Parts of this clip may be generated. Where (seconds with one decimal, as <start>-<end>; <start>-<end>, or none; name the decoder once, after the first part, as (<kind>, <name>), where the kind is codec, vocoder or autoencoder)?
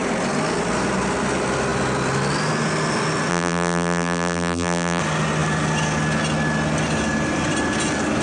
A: 3.3-5.0 (vocoder, BigVGAN v2)